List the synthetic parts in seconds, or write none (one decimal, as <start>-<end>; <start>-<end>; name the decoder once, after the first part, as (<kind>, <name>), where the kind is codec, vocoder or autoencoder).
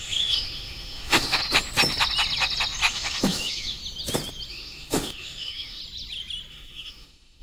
0.0-1.4 (autoencoder, DAC-VAE); 2.9-3.8; 4.5-5.8; 6.5-7.4